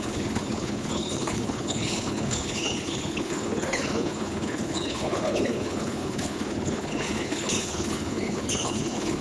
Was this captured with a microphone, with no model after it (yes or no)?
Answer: no